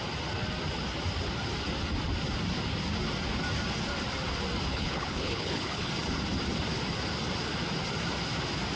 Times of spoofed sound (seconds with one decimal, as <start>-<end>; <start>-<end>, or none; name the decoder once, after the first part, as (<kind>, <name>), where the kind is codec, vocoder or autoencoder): 4.7-5.9 (codec, HILCodec)